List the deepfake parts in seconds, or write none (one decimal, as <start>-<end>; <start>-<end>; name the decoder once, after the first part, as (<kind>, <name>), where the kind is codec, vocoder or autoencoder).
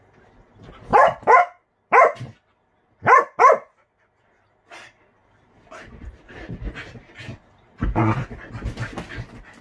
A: none